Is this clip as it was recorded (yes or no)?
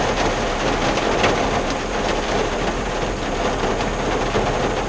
yes